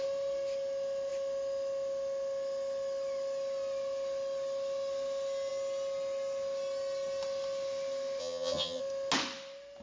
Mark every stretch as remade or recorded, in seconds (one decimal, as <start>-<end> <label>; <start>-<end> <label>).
0.0-8.2 recorded; 8.2-8.8 remade; 8.8-9.8 recorded